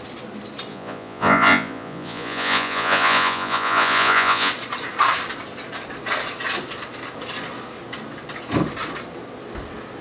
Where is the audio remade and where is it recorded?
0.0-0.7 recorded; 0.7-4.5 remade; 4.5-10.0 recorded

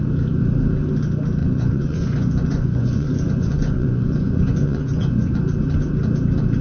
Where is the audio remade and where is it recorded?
0.0-1.4 recorded; 1.4-5.4 remade; 5.4-6.6 recorded